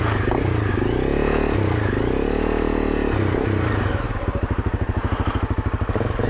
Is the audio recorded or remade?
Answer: recorded